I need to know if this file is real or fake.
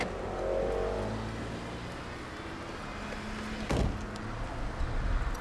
real